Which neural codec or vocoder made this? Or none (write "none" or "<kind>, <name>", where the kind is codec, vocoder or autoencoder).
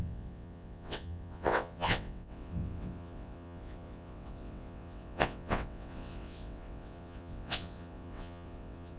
vocoder, WaveNeXt